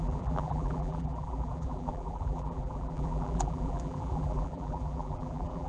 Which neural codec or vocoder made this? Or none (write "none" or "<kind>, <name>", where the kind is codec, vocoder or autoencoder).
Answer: vocoder, BigVGAN v2